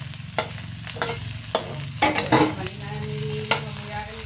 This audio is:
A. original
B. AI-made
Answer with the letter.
A